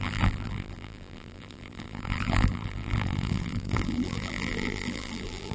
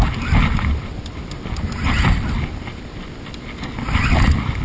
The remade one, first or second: first